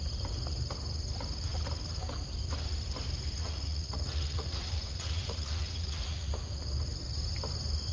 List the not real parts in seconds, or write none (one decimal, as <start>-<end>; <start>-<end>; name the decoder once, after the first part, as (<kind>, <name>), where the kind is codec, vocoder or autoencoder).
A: 3.4-6.3 (vocoder, Vocos)